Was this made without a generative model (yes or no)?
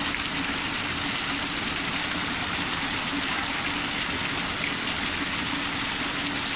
yes